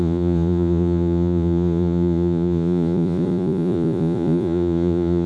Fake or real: fake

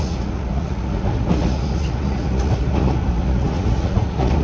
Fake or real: fake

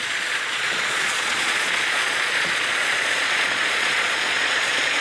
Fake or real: fake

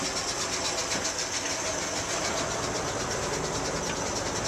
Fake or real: real